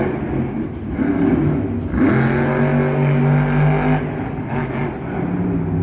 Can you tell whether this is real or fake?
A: real